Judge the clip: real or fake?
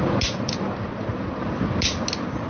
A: real